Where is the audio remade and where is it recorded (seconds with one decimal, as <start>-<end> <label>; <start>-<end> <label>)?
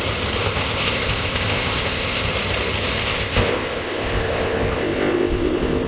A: 0.0-0.4 recorded; 0.4-2.3 remade; 2.3-3.0 recorded; 3.0-5.9 remade